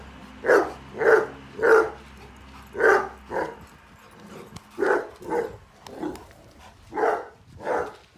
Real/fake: real